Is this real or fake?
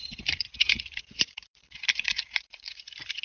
fake